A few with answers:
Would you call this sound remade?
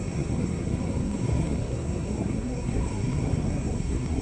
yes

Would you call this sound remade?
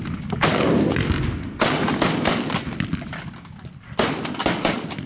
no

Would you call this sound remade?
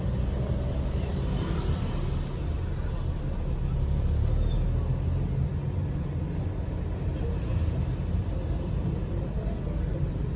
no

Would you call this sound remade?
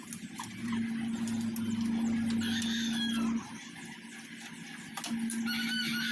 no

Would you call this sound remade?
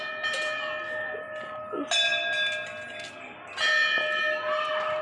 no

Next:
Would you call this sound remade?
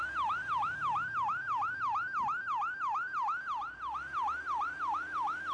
no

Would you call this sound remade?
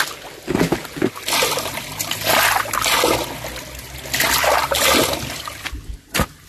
no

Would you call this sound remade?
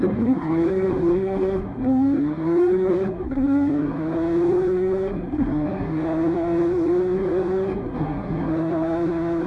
yes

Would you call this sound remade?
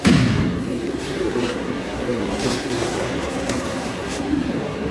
yes